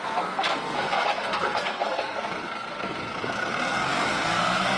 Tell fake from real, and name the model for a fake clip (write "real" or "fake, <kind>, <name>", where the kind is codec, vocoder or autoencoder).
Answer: fake, codec, SNAC